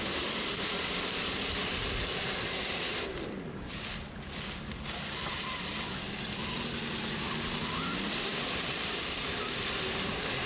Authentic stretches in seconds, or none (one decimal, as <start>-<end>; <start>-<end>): 0.0-10.5